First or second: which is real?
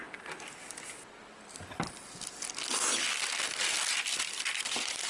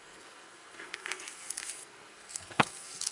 first